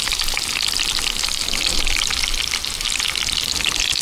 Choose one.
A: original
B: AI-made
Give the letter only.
A